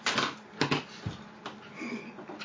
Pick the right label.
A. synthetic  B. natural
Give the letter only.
B